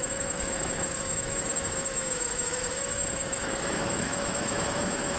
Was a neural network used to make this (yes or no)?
yes